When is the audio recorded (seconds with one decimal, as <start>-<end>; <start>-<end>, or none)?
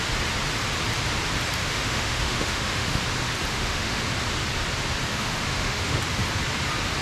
0.0-1.6; 3.0-3.5; 4.0-5.1; 6.0-7.0